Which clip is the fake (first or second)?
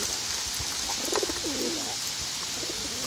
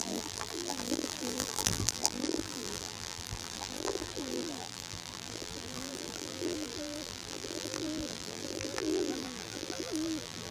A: second